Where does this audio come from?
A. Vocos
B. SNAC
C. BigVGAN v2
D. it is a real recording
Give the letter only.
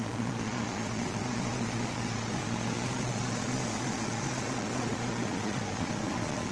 A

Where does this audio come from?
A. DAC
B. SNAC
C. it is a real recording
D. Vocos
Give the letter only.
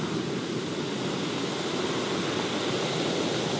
C